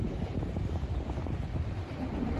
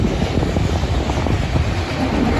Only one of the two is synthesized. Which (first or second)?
first